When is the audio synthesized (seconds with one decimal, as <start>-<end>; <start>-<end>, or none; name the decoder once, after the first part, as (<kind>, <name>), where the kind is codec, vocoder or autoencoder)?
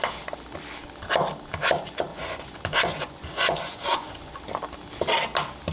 2.1-4.4 (vocoder, Vocos)